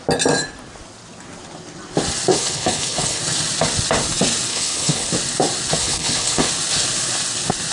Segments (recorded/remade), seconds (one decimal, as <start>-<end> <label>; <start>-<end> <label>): 0.0-2.3 recorded; 2.3-3.2 remade; 3.2-4.5 recorded; 4.5-5.1 remade; 5.1-5.8 recorded; 5.8-6.5 remade; 6.5-7.7 recorded